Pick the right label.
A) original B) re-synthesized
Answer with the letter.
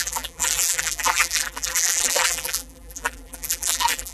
B